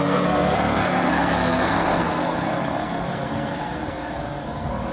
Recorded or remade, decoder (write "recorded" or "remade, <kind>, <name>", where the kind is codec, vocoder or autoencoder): remade, codec, SNAC